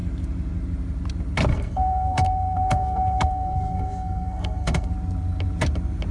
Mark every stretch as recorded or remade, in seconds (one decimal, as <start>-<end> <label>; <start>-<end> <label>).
0.0-1.5 recorded; 1.5-4.9 remade; 4.9-6.1 recorded